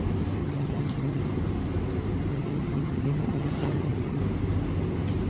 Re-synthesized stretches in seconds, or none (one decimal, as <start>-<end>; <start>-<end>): 0.4-1.2; 2.3-4.2